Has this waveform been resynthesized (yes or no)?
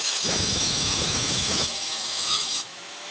yes